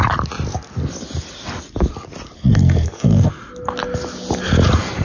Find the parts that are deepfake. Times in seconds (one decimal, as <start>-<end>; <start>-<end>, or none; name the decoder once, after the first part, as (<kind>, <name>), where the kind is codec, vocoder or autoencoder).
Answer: 2.5-3.3 (codec, SNAC)